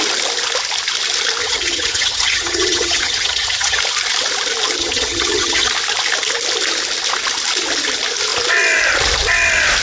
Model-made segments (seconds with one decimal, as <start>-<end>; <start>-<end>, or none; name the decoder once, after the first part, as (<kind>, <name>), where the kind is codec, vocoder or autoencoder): 1.4-3.8 (vocoder, HiFi-GAN); 4.8-5.7